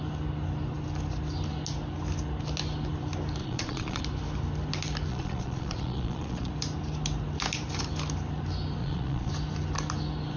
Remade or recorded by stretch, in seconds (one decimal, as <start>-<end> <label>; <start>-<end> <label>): 0.0-3.4 recorded; 3.4-4.0 remade; 4.0-5.1 recorded; 5.1-6.5 remade; 6.5-8.8 recorded; 8.8-9.3 remade; 9.3-10.4 recorded